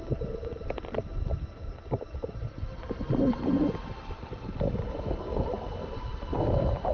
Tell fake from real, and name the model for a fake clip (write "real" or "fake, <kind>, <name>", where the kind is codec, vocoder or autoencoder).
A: real